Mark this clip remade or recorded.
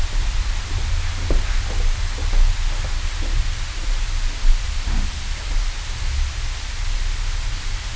recorded